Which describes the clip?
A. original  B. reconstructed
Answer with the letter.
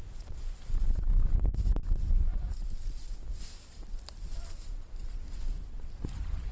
B